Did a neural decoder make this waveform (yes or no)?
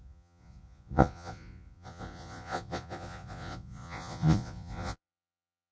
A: yes